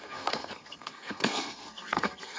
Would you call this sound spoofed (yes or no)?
yes